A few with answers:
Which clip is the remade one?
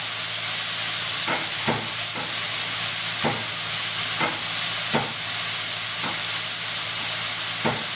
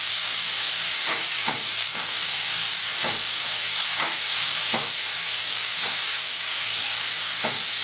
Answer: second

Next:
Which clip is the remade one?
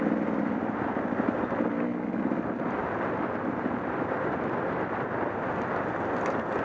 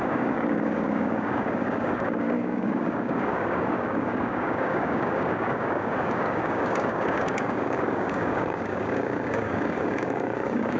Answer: second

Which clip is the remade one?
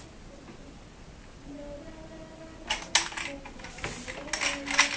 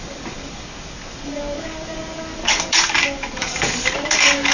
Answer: second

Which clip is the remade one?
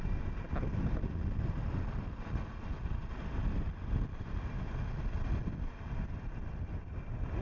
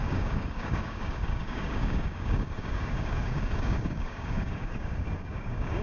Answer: second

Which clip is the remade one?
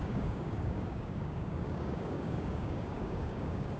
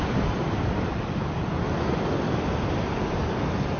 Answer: first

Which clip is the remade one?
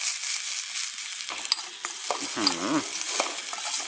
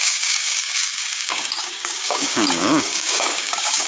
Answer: second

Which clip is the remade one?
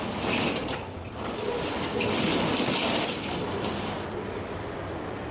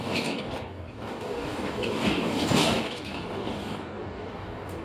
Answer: second